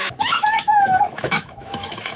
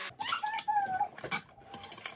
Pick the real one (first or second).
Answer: second